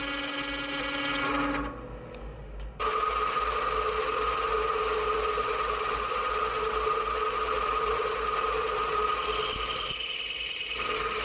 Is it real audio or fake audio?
real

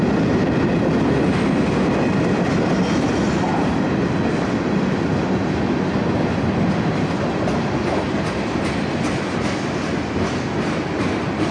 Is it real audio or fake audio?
real